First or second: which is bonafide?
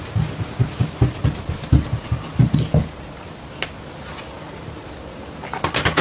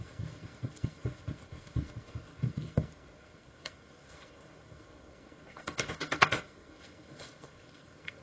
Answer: first